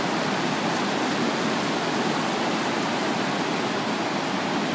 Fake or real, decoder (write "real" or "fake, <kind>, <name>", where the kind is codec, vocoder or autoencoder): real